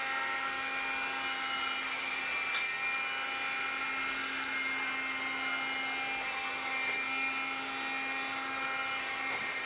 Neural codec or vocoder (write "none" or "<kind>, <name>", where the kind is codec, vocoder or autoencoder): none